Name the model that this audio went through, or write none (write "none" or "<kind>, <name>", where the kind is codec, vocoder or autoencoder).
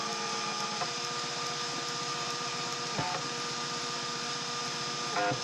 none